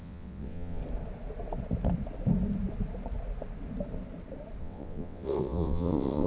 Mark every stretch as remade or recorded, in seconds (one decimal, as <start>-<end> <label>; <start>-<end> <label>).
0.0-0.8 remade; 0.8-4.6 recorded; 4.6-6.3 remade